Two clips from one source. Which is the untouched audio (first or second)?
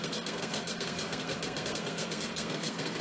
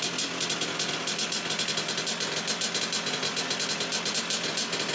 second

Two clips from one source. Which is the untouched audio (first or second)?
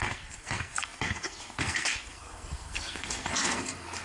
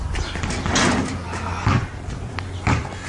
second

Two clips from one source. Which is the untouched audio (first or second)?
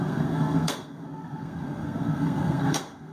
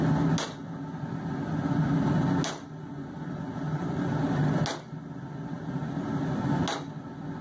second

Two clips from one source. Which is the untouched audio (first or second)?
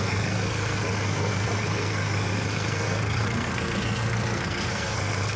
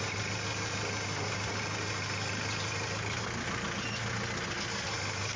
second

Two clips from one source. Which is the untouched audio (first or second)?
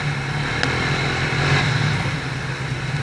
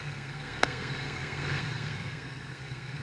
first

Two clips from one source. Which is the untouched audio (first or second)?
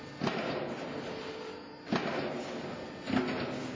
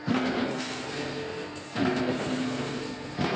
first